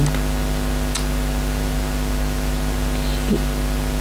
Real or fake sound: real